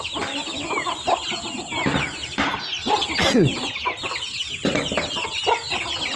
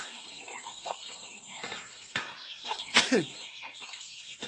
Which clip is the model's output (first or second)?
second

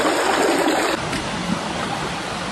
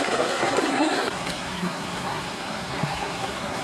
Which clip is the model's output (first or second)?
second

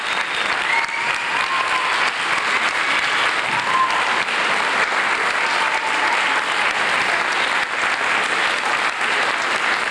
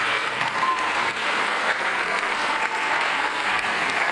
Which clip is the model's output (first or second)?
second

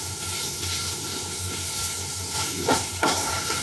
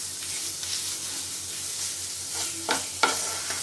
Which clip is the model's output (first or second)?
first